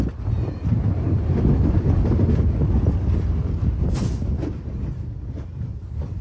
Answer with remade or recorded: recorded